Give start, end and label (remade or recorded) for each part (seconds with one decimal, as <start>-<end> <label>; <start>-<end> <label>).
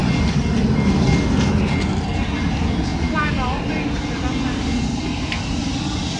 0.0-6.2 recorded